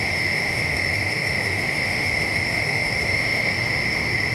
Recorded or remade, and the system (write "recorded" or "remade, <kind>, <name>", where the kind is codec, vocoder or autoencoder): remade, autoencoder, DAC-VAE